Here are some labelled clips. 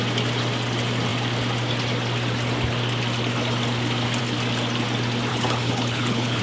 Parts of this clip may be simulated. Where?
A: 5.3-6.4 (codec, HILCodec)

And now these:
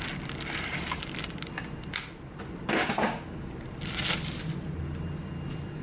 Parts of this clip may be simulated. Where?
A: 2.8-3.5 (codec, DAC)